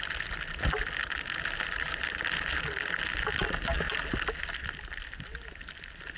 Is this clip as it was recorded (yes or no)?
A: yes